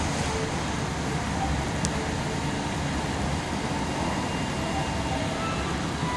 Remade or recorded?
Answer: recorded